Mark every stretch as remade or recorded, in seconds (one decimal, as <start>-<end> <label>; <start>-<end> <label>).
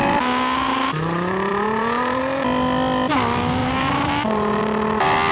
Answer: 0.0-1.5 recorded; 1.5-2.2 remade; 2.2-3.6 recorded; 3.6-4.6 remade; 4.6-5.3 recorded